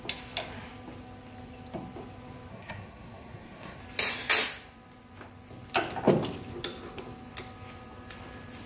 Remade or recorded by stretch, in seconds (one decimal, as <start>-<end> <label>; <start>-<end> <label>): 0.0-2.5 recorded; 2.5-3.8 remade; 3.8-8.7 recorded